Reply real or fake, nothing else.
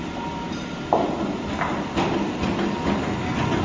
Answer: real